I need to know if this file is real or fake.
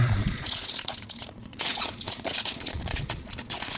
fake